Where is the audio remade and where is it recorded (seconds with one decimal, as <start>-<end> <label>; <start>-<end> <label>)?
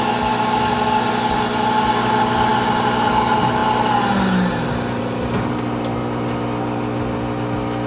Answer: 0.0-7.9 recorded